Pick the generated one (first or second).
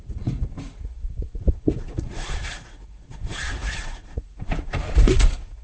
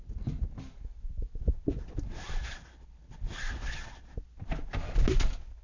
first